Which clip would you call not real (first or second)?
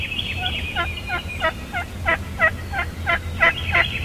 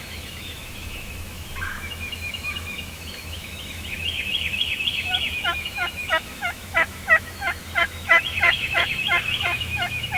second